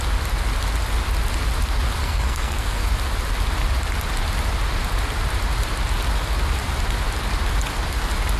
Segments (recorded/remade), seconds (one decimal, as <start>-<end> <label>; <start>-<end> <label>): 0.0-2.0 recorded; 2.0-2.9 remade; 2.9-8.4 recorded